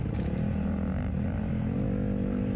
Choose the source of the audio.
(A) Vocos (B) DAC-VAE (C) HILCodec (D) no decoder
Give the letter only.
D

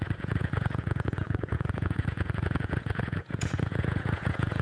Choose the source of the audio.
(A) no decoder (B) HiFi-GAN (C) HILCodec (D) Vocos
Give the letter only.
D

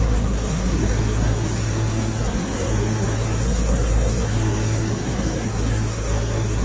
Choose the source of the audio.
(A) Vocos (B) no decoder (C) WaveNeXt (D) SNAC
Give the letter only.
D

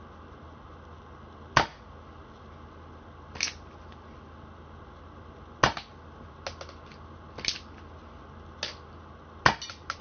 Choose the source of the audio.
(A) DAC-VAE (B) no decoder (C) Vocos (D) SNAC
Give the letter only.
B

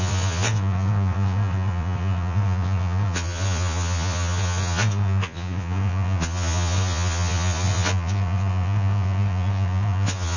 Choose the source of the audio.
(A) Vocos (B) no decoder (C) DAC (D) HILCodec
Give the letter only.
A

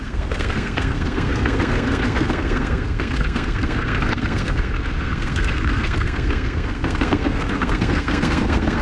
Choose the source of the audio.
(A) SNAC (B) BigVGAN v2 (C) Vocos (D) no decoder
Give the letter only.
A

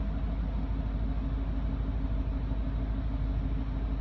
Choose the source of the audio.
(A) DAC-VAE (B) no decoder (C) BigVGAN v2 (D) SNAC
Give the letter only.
B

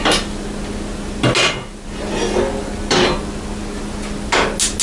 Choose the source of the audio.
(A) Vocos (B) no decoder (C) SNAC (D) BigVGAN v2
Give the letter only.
B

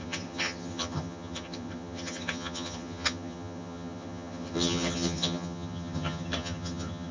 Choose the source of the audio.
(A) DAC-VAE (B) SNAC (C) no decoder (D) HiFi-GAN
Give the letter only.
D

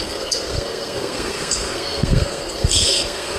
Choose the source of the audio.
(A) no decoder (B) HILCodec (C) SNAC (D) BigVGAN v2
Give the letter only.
C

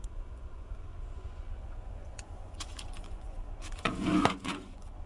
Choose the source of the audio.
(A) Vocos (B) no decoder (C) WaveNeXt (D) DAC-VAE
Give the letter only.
A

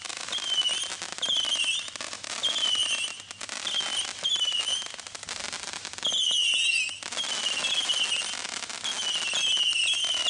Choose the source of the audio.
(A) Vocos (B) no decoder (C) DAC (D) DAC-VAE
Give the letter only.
B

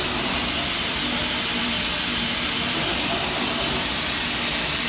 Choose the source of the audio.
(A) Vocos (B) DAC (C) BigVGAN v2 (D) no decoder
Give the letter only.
D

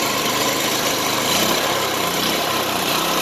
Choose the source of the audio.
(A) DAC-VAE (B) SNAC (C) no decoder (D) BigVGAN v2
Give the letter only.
D